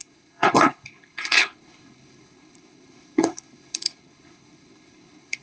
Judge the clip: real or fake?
fake